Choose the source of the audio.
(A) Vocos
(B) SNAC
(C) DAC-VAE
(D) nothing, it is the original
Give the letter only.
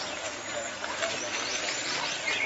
D